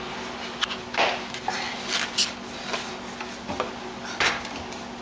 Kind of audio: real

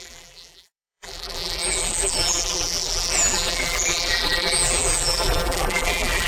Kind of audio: fake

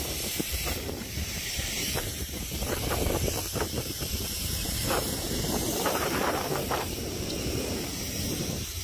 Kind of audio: fake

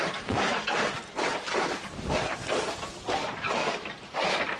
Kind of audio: fake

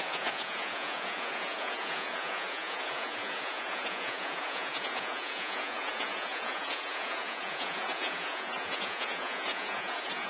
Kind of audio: fake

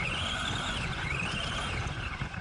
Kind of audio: fake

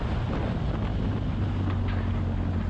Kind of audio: real